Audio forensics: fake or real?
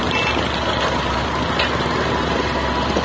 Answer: real